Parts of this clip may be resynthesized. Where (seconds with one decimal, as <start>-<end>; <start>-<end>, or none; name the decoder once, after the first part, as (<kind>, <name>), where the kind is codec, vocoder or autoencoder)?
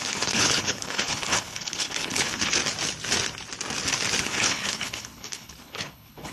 0.0-2.6 (codec, HILCodec); 4.2-6.3